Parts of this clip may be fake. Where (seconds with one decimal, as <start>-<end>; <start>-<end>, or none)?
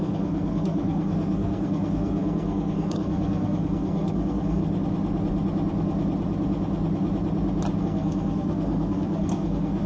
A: 0.0-4.6; 7.8-9.9